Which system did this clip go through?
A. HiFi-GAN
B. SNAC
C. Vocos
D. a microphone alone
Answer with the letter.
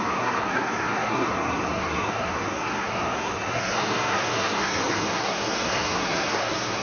B